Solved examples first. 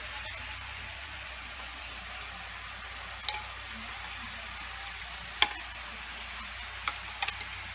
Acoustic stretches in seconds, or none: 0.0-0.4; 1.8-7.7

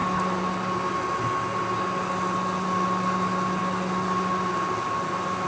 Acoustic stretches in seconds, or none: 0.0-5.5

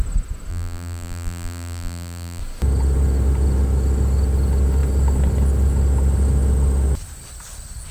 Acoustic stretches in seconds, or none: 0.0-0.5; 2.4-7.9

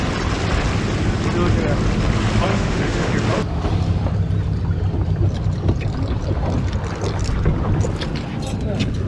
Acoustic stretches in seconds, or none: 0.0-2.5; 3.1-9.1

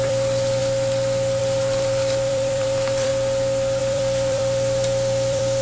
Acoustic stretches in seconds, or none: 0.6-1.4; 3.1-3.8